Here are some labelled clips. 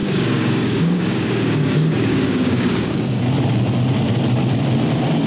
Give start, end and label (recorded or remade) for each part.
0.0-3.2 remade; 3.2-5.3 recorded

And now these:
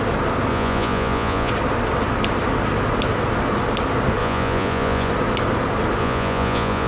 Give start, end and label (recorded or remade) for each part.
0.0-0.5 recorded; 0.5-1.5 remade; 1.5-4.2 recorded; 4.2-5.1 remade; 5.1-6.0 recorded; 6.0-6.9 remade

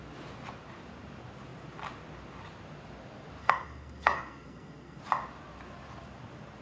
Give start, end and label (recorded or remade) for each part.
0.0-3.4 recorded; 3.4-5.0 remade; 5.0-6.6 recorded

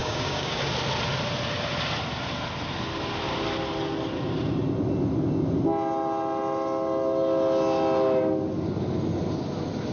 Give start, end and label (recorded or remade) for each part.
0.0-0.6 remade; 0.6-9.9 recorded

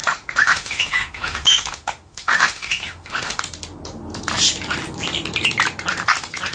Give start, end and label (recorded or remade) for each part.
0.0-3.4 remade; 3.4-6.5 recorded

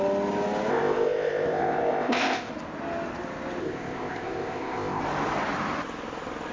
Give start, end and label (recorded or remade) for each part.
0.0-0.7 recorded; 0.7-2.5 remade; 2.5-3.6 recorded; 3.6-5.0 remade; 5.0-6.5 recorded